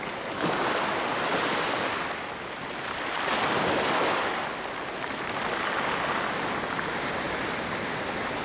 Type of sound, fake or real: real